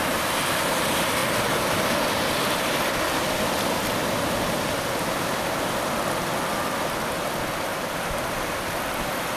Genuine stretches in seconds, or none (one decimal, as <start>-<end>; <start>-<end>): 0.0-7.7; 8.6-9.4